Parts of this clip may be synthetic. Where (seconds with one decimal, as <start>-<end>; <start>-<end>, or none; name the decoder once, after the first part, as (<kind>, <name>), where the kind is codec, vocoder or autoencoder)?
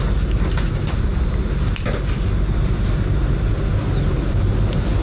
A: none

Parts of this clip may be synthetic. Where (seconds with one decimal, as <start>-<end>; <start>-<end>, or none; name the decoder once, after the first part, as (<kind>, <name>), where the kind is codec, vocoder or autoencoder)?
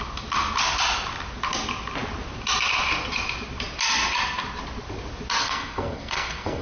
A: 5.4-6.6 (codec, SNAC)